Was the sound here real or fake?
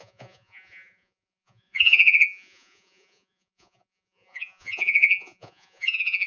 fake